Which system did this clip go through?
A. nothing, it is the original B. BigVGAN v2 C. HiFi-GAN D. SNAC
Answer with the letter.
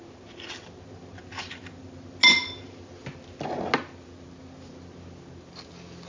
A